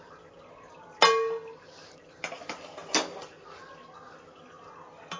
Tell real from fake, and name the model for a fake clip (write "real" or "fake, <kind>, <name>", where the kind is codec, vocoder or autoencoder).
real